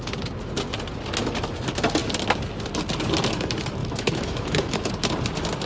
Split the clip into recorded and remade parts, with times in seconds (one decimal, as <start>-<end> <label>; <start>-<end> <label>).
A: 0.0-3.8 recorded; 3.8-4.9 remade; 4.9-5.7 recorded